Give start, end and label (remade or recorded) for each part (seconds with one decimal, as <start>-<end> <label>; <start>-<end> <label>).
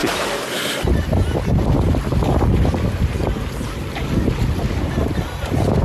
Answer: 0.0-5.8 recorded